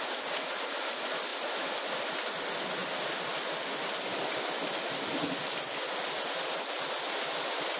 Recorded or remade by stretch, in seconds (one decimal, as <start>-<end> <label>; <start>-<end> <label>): 0.0-7.8 recorded